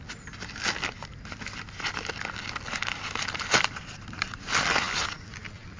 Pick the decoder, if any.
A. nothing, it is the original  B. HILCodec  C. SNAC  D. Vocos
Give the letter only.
A